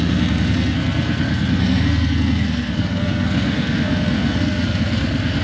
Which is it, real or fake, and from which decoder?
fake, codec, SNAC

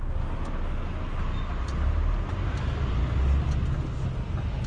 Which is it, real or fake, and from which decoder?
real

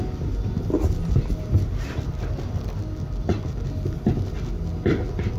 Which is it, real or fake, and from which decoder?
real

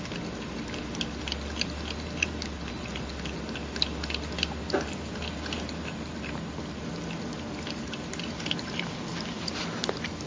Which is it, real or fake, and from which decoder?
real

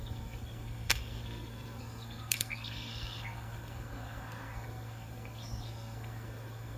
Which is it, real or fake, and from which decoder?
fake, codec, SNAC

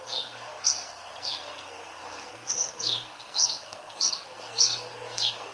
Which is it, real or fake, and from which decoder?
fake, codec, SNAC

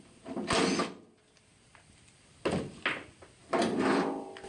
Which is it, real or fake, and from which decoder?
real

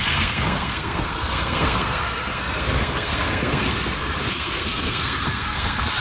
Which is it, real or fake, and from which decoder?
fake, codec, SNAC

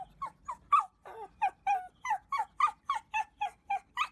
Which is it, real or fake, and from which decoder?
real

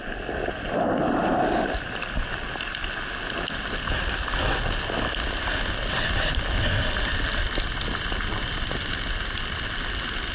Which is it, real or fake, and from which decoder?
real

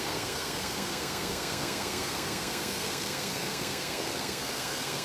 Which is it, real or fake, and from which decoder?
fake, codec, SNAC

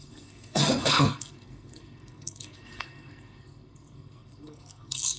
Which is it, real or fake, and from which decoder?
fake, codec, SNAC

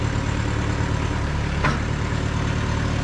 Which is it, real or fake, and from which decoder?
real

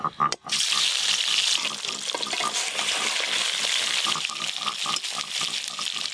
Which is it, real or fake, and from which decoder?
real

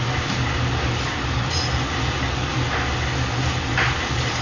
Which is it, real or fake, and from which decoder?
real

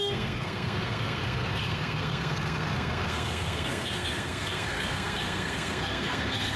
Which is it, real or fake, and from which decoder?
fake, codec, SNAC